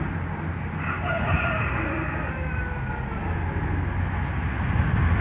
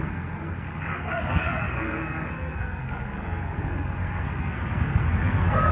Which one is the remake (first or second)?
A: second